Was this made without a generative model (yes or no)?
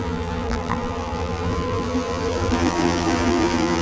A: no